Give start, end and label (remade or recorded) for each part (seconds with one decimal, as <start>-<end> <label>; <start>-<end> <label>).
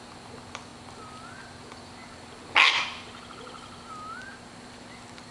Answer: 0.0-5.3 recorded